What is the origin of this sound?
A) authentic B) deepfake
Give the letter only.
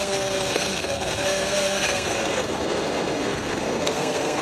B